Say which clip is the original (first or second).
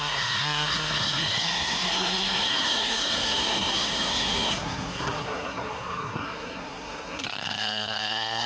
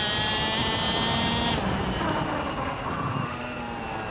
second